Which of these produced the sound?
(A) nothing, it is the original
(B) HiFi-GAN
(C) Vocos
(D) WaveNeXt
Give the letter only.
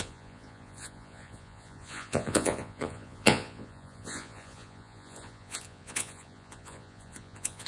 C